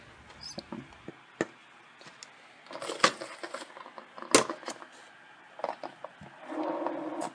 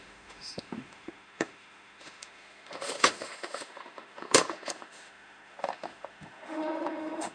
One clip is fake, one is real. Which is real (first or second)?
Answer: first